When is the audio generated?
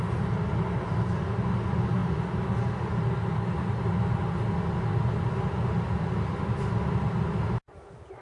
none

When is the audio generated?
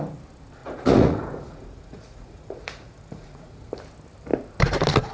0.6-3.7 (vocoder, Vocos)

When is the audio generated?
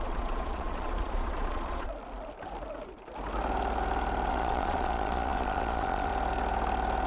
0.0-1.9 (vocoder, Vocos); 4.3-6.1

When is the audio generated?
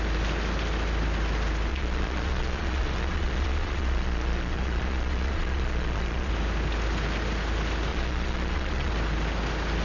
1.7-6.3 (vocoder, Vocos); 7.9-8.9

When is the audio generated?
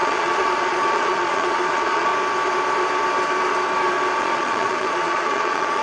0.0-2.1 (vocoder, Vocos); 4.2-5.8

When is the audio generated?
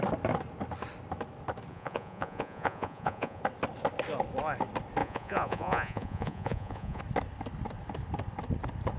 1.7-3.4 (vocoder, Vocos); 5.0-7.0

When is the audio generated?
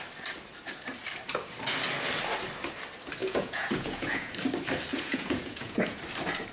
3.2-4.3 (vocoder, Vocos); 4.9-6.0